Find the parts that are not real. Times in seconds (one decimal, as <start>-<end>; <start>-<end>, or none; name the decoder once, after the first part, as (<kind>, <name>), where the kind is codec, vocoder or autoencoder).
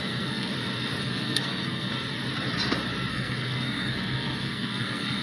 0.0-0.5 (codec, SNAC); 1.0-1.9; 3.1-5.2